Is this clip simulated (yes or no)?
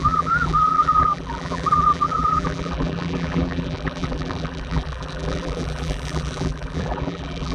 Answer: yes